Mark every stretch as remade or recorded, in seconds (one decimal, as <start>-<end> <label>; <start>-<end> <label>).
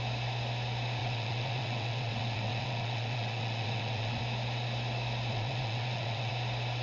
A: 0.0-1.0 recorded; 1.0-4.2 remade; 4.2-5.3 recorded; 5.3-6.3 remade; 6.3-6.8 recorded